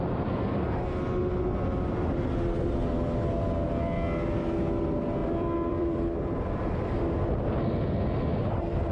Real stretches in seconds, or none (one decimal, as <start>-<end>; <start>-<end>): 0.0-5.2; 6.5-8.9